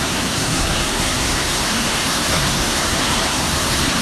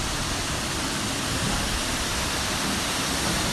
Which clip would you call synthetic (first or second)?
first